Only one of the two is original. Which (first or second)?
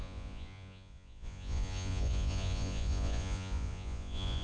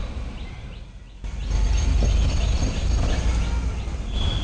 second